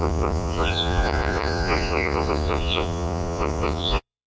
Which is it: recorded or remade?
remade